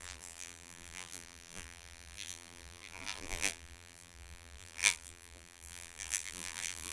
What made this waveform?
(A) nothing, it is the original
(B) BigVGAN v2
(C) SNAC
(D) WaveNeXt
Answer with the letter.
B